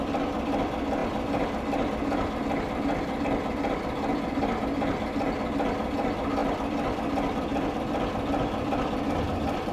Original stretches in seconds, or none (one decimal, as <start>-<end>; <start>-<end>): 0.0-6.4; 9.1-9.7